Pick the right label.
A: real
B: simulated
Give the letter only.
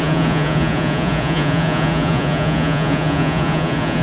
B